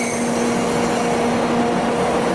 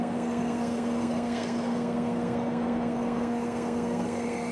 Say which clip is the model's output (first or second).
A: second